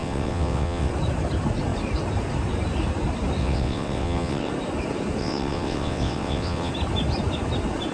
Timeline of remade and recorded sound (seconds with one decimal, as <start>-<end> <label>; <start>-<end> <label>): 0.0-0.9 remade; 0.9-3.4 recorded; 3.4-4.5 remade; 4.5-5.2 recorded; 5.2-6.7 remade; 6.7-7.9 recorded